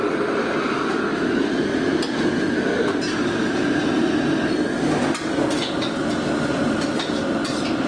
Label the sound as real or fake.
real